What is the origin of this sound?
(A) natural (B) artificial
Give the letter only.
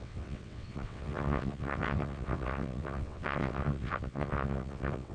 B